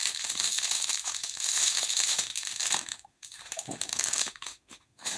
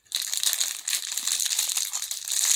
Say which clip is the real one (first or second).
second